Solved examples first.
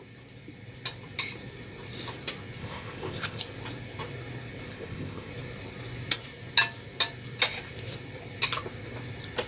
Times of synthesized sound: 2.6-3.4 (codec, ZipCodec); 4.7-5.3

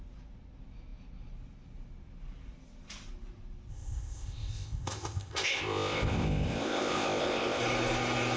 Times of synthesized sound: 3.7-7.6 (codec, ZipCodec)

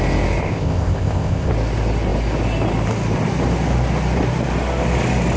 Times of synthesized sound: 0.4-1.5 (codec, ZipCodec)

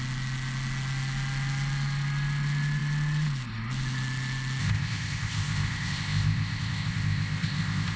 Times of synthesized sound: 4.6-8.0 (codec, ZipCodec)